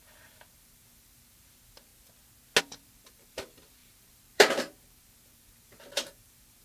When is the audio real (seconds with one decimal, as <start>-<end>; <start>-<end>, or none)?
1.9-2.6

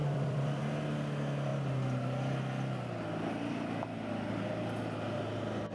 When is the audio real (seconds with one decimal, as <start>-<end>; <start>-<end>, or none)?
0.6-5.7

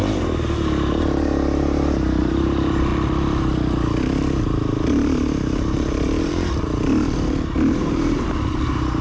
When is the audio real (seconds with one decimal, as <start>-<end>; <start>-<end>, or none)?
2.9-4.0

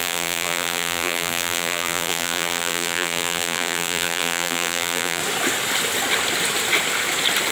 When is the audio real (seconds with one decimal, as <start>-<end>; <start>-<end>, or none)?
5.2-7.5